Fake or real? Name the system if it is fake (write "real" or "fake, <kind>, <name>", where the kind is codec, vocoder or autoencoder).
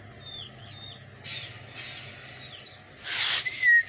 real